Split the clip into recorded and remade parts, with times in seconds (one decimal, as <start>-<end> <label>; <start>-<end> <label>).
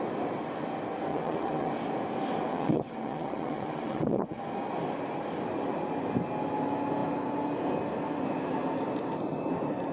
0.0-1.1 recorded; 1.1-1.7 remade; 1.7-2.5 recorded; 2.5-4.4 remade; 4.4-9.9 recorded